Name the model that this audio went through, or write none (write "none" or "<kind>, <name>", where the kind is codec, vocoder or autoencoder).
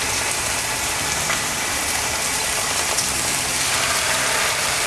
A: vocoder, BigVGAN v2